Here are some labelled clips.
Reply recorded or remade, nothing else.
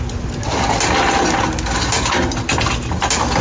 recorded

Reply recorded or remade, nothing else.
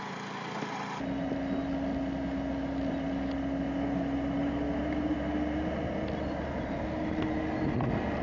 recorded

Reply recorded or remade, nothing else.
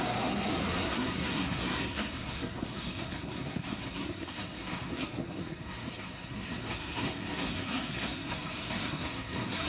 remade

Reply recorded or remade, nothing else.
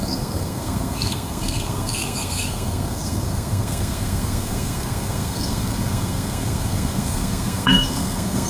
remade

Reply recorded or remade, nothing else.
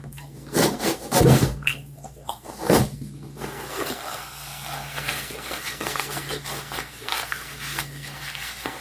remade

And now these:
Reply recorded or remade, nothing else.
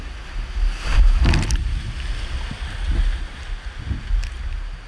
recorded